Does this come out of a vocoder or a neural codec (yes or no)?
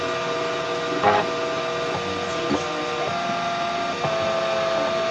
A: no